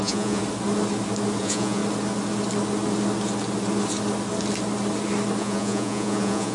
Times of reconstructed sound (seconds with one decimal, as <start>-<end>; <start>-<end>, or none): 0.0-0.4; 1.4-1.8; 5.4-6.5